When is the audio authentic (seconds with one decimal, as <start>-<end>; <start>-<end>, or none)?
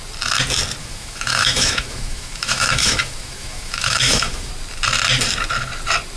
0.0-0.8; 4.5-6.2